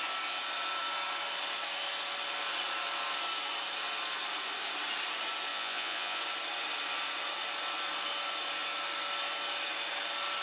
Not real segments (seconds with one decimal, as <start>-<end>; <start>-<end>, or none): 5.5-6.2